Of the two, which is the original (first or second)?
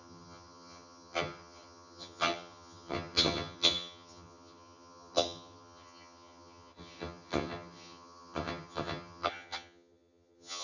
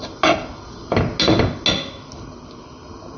second